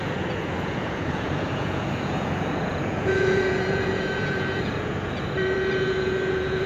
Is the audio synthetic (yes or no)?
yes